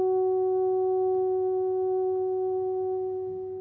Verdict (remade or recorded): recorded